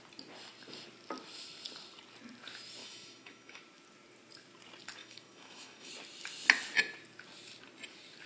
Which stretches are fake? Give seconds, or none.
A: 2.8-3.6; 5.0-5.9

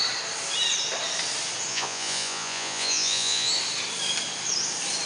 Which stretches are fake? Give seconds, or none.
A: 1.7-3.5

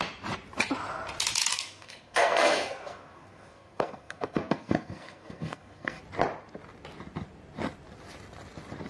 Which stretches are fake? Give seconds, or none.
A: 1.5-6.0